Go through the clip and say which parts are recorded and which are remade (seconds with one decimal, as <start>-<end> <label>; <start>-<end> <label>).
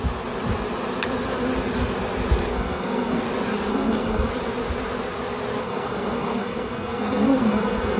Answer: 0.0-2.5 recorded; 2.5-3.2 remade; 3.2-3.7 recorded; 3.7-4.3 remade; 4.3-5.6 recorded; 5.6-8.0 remade